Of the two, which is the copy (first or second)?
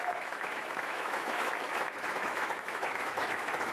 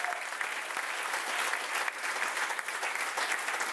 first